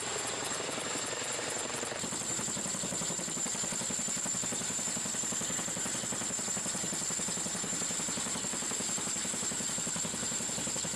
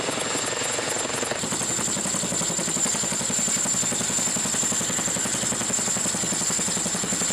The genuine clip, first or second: second